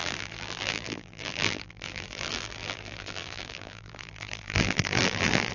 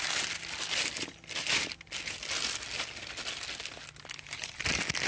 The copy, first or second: first